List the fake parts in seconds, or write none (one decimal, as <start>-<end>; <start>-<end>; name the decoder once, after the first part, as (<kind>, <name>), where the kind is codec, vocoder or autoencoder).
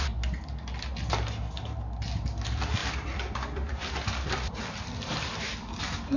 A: 2.8-6.2 (vocoder, BigVGAN v2)